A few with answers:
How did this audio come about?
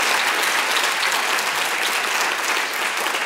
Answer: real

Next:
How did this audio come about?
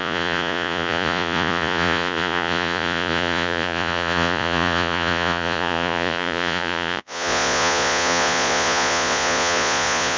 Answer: fake